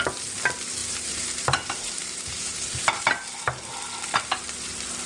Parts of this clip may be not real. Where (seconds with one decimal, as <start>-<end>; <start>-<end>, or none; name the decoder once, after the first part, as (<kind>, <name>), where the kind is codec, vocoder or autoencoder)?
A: 0.8-3.0 (vocoder, BigVGAN v2)